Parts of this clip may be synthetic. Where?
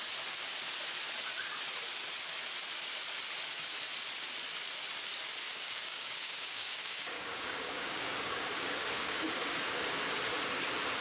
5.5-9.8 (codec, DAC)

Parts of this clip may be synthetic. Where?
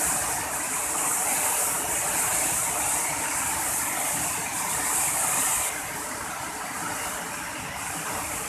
none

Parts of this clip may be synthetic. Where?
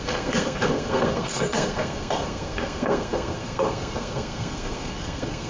0.0-5.5 (codec, SNAC)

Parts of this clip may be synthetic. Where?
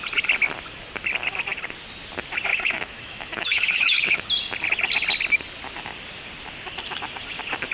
2.5-4.3 (autoencoder, DAC-VAE)